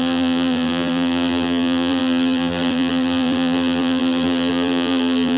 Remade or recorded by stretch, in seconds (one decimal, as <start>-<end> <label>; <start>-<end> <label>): 0.0-5.4 remade